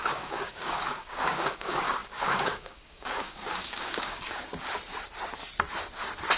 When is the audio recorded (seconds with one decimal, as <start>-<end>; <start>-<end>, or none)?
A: 4.5-6.4